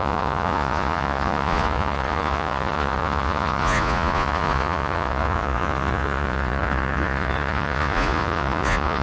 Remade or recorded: remade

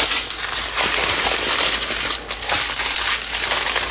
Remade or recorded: recorded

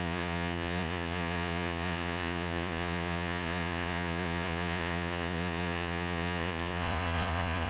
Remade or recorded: remade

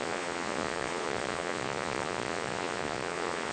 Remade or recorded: remade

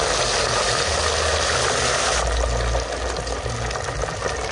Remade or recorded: recorded